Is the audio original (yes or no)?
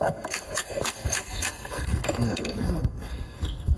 no